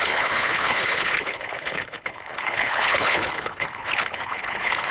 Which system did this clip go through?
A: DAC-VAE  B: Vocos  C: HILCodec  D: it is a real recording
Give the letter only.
C